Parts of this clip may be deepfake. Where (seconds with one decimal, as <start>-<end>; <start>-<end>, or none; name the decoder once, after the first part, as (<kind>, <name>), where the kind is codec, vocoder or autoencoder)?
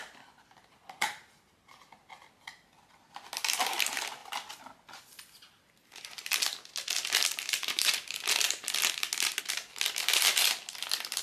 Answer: none